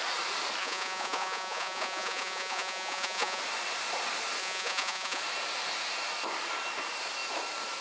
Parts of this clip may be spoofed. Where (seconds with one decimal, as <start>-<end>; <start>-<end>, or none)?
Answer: 0.6-3.4; 4.4-5.2